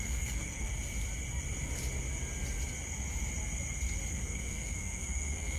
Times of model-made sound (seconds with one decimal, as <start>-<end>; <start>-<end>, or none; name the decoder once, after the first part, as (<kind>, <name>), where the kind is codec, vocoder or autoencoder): 0.0-0.7 (codec, SNAC); 4.1-5.6

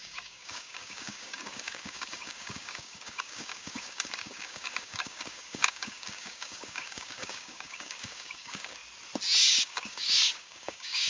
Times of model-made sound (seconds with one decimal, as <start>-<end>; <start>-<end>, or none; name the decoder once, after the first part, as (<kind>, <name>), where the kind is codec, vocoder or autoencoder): 0.0-8.8 (codec, DAC); 9.5-11.1